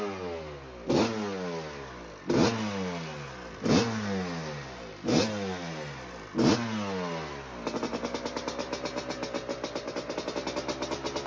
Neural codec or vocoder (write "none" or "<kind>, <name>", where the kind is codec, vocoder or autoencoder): none